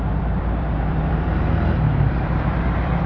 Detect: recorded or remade remade